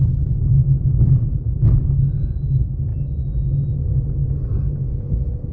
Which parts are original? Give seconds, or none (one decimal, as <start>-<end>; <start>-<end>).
0.0-5.5